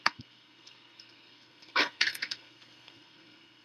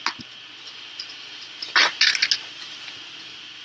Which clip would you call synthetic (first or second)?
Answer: first